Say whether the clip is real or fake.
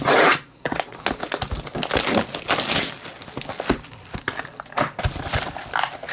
real